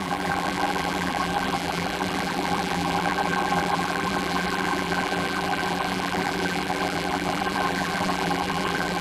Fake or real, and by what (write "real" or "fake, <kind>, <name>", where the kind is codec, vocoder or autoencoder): fake, vocoder, BigVGAN v2